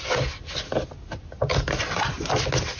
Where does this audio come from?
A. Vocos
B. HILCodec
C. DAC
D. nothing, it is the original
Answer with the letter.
D